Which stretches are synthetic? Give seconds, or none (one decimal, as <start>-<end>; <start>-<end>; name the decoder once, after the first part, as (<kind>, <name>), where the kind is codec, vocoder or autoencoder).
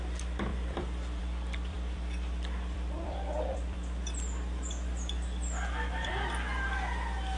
0.5-1.2 (vocoder, BigVGAN v2); 1.7-6.1